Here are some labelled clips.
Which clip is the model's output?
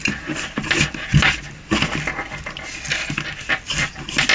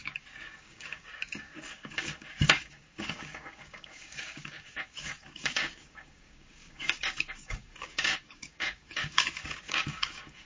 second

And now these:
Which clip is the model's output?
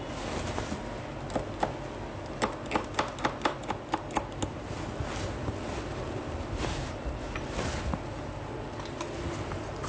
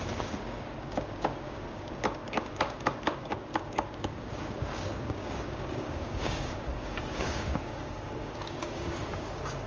second